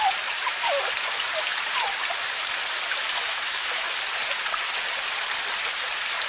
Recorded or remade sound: recorded